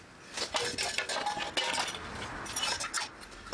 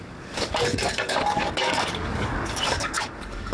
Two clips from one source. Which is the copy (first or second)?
second